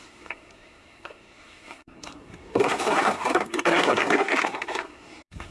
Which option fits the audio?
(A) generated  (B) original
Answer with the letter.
A